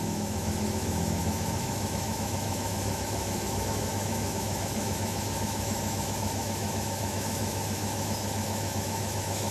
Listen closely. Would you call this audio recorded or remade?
remade